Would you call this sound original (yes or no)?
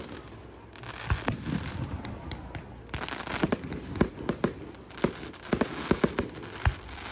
yes